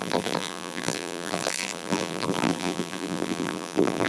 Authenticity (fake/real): fake